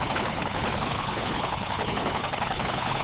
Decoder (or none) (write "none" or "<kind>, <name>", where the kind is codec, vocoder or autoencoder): codec, HILCodec